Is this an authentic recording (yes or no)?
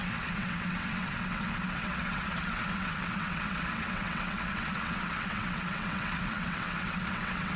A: no